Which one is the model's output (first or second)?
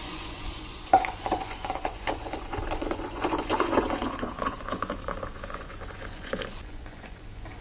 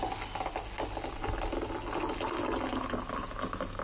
first